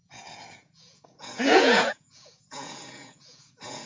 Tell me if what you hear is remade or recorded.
remade